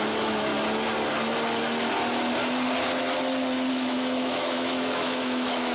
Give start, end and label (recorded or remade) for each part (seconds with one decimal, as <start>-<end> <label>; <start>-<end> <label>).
0.0-0.5 remade; 0.5-3.7 recorded; 3.7-5.7 remade